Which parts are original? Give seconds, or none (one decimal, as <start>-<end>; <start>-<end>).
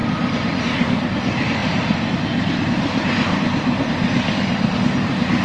0.0-1.6; 4.8-5.4